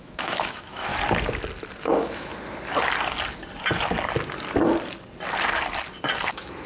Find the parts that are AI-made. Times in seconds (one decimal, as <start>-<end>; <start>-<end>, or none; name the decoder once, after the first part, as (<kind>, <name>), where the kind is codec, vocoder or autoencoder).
0.0-0.9 (autoencoder, DAC-VAE); 1.8-2.3; 6.3-6.7